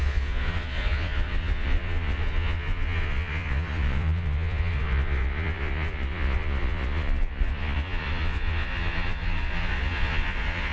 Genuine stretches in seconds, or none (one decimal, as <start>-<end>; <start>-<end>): none